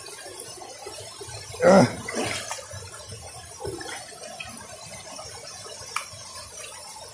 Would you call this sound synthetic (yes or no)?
no